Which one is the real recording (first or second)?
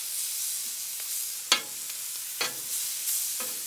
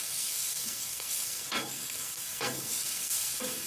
first